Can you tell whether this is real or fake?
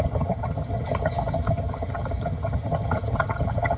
fake